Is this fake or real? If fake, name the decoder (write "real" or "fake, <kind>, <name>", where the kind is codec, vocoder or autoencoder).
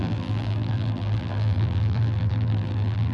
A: fake, vocoder, BigVGAN v2